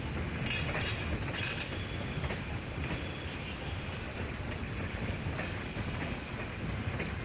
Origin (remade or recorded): recorded